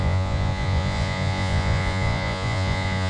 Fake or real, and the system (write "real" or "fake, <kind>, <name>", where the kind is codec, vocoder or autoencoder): fake, vocoder, Vocos